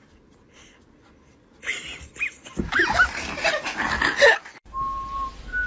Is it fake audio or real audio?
real